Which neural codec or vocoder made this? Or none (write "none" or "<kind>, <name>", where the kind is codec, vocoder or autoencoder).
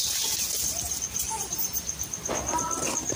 none